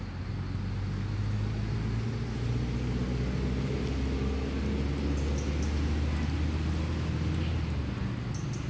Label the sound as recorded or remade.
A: recorded